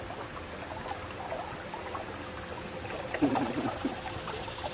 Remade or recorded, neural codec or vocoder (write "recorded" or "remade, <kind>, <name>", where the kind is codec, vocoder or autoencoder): recorded